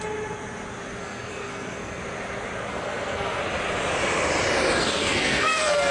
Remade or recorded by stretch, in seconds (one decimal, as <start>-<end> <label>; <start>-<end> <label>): 0.0-1.0 recorded; 1.0-2.0 remade; 2.0-2.7 recorded; 2.7-3.4 remade; 3.4-4.8 recorded; 4.8-5.9 remade